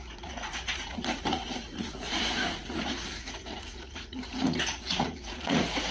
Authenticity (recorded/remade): remade